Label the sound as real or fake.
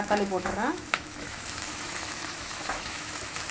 fake